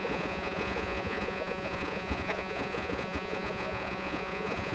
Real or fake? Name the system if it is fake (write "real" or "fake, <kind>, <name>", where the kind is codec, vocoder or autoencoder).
fake, vocoder, Vocos